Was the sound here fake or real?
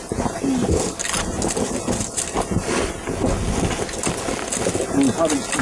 real